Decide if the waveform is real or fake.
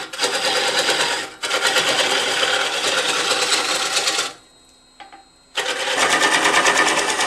real